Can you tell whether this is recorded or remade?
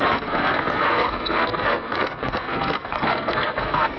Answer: remade